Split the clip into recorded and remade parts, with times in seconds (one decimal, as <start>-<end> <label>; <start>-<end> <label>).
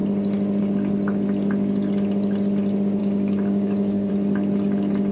0.0-3.0 recorded; 3.0-4.1 remade; 4.1-5.1 recorded